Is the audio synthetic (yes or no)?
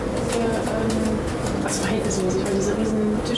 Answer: no